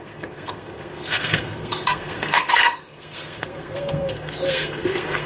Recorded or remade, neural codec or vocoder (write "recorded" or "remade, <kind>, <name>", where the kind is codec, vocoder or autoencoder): remade, codec, SNAC